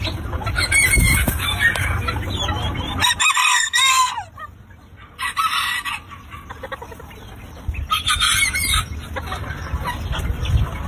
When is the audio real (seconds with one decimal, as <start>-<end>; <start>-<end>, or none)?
0.0-3.5; 4.1-10.9